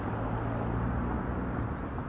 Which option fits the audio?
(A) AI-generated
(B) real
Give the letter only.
B